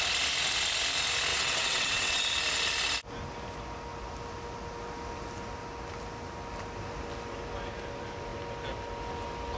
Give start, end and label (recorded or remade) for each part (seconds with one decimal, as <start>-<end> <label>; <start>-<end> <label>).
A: 0.0-1.3 recorded; 1.3-2.2 remade; 2.2-9.6 recorded